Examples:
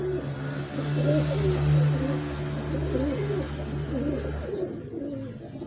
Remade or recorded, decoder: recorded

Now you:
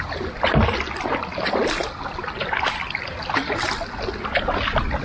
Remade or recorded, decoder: recorded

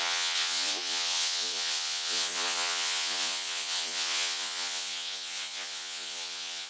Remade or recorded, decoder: remade, vocoder, Vocos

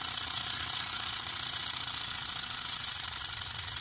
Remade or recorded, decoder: remade, vocoder, Vocos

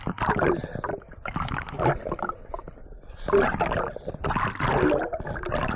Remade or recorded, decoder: recorded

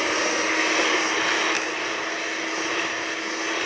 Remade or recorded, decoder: recorded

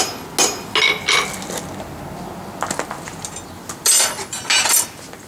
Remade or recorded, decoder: recorded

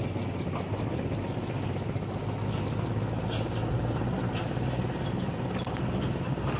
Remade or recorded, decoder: recorded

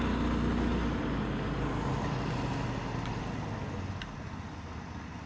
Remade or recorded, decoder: recorded